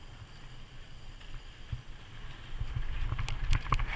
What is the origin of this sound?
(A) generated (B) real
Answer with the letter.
B